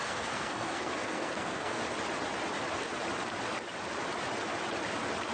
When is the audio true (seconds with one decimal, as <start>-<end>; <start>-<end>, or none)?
1.8-5.3